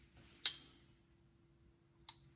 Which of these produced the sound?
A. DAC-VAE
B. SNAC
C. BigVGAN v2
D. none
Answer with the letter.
D